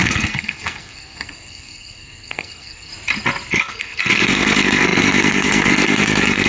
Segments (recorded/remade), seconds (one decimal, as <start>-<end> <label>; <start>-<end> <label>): 0.0-2.9 remade; 2.9-3.5 recorded; 3.5-6.5 remade